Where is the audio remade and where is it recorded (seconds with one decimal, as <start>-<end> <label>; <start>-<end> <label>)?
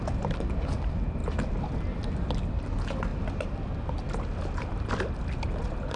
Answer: 0.0-6.0 recorded